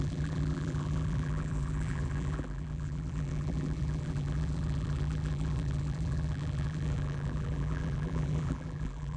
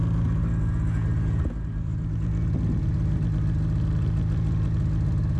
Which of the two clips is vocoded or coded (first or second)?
first